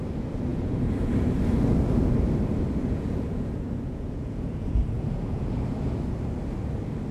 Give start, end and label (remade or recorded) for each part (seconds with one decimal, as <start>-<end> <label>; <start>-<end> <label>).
0.0-0.5 recorded; 0.5-1.1 remade; 1.1-2.8 recorded; 2.8-6.0 remade; 6.0-7.1 recorded